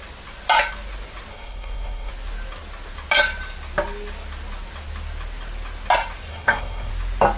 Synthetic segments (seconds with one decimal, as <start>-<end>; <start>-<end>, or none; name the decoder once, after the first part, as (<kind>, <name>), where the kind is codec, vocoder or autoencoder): 1.3-2.1 (codec, SNAC); 6.3-6.9